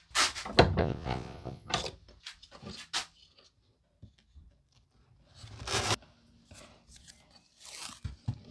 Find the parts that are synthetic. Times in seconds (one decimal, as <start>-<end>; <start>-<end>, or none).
0.8-1.7